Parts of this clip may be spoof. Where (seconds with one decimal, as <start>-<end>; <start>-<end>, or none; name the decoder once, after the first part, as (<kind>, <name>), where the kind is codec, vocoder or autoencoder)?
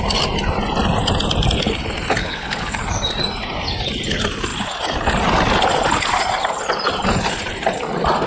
2.2-2.8 (codec, HILCodec)